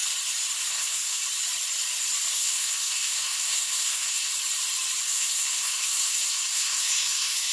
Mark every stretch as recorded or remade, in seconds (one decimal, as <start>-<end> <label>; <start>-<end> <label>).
0.0-0.7 recorded; 0.7-1.2 remade; 1.2-2.3 recorded; 2.3-4.3 remade; 4.3-5.0 recorded; 5.0-7.5 remade